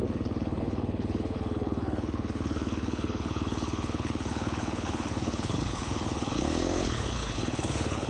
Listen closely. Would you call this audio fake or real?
fake